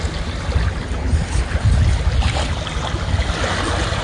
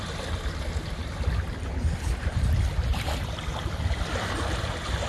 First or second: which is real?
first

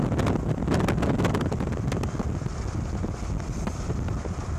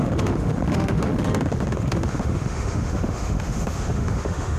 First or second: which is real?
first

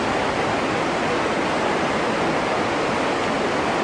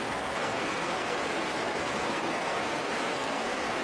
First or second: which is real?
first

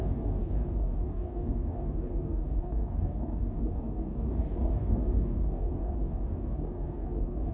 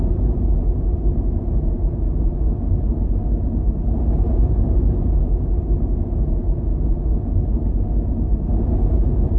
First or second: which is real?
second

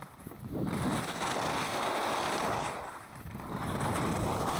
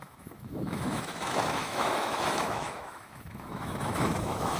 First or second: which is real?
first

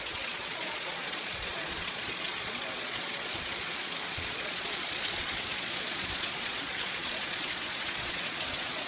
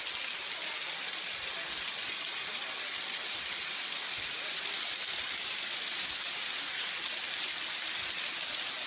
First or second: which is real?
second